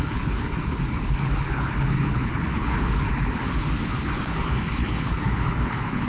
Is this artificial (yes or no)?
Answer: yes